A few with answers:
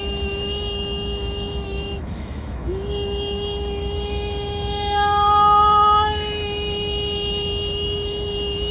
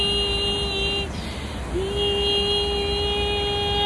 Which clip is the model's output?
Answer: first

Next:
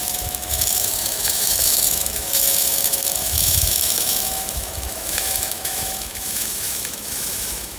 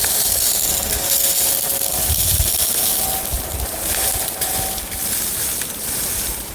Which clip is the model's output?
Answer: first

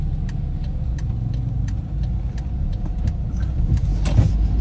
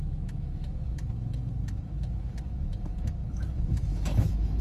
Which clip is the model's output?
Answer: second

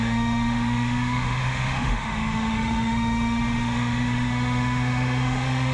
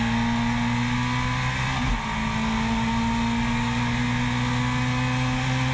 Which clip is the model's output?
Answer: first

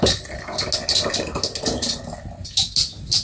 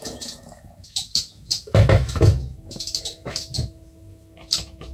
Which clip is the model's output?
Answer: second